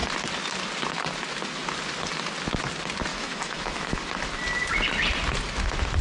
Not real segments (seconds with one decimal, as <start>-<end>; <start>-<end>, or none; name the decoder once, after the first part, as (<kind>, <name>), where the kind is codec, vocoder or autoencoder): 3.1-4.0 (autoencoder, DAC-VAE)